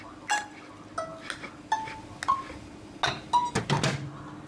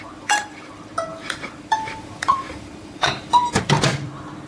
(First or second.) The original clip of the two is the first